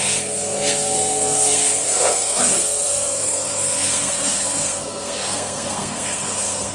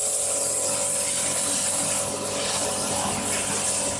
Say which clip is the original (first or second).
second